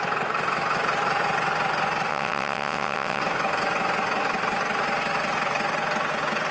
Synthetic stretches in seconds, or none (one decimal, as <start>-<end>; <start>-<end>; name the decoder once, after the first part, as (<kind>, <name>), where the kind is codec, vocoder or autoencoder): 2.1-3.2 (vocoder, WaveNeXt)